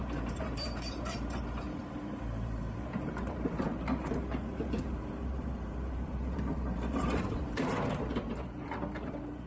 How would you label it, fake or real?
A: fake